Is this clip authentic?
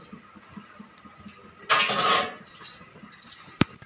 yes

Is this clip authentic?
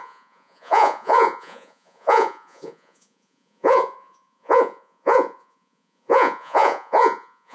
no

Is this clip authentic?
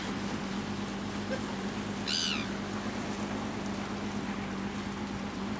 yes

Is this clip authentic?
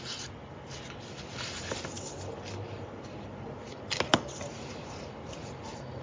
yes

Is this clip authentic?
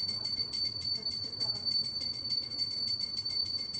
no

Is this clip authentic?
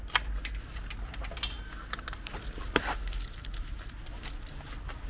yes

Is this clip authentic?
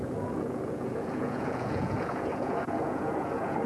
no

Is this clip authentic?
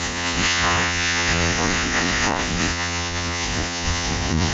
no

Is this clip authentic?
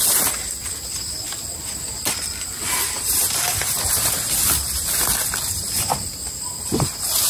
yes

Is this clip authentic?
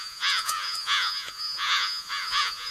no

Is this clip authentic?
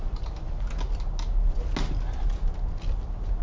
yes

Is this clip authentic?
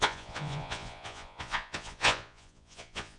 no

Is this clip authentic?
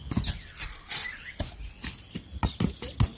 yes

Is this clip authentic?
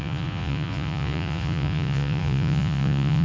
no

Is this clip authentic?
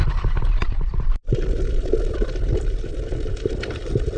yes